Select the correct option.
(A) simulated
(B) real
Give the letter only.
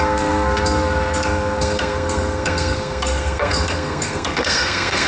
A